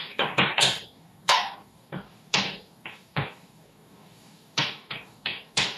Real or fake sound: fake